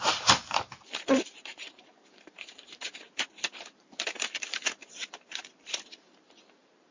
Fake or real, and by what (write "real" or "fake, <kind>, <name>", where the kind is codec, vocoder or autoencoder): fake, vocoder, BigVGAN v2